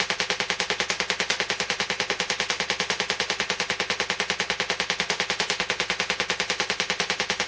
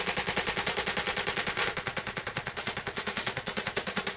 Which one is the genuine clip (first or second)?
first